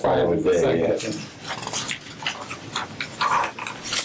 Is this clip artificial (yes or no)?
no